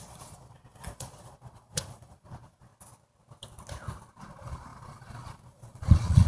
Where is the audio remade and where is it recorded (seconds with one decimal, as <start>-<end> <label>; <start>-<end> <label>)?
0.0-2.7 remade; 2.7-4.2 recorded; 4.2-6.3 remade